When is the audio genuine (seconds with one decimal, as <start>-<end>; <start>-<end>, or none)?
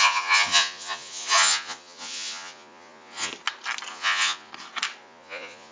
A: 3.3-3.9; 4.5-5.0